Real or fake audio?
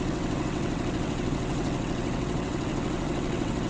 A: fake